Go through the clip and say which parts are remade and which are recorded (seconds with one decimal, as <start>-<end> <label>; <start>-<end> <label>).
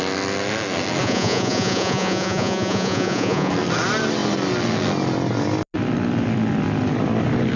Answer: 0.0-1.0 recorded; 1.0-3.5 remade; 3.5-7.6 recorded